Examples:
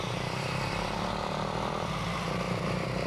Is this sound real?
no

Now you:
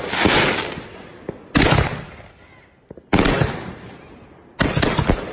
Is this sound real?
yes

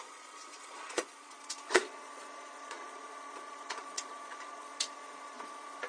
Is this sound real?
no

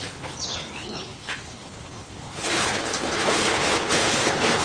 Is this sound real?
no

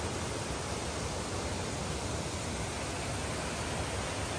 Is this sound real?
yes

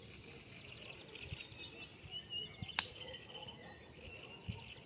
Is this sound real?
yes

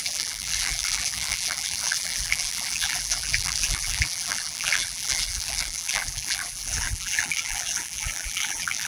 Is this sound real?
no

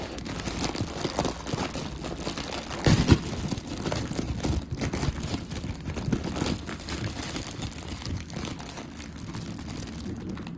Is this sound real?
yes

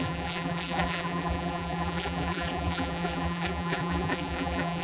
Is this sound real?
no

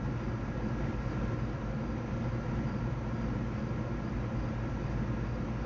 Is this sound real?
no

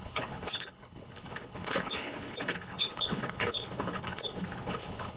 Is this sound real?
no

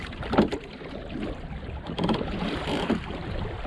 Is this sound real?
no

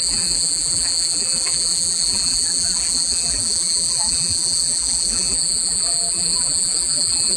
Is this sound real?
no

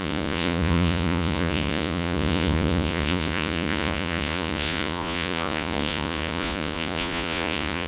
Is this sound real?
no